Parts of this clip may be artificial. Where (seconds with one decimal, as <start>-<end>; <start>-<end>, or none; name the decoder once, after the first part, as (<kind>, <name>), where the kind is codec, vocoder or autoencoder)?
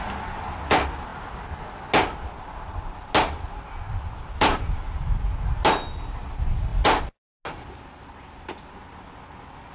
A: none